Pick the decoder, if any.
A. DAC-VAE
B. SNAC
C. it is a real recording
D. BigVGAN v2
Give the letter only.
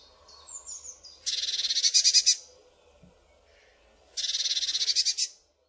C